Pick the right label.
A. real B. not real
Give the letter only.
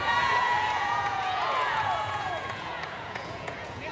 B